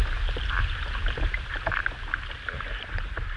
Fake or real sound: real